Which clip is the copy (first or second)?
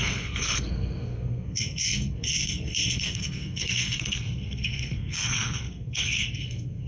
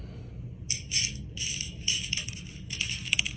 first